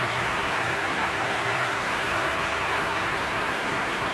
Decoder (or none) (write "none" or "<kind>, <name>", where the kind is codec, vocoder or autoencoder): codec, SNAC